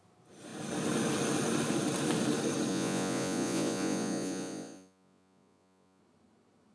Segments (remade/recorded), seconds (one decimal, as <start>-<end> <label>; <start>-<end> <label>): 0.0-2.7 recorded; 2.7-6.0 remade; 6.0-6.7 recorded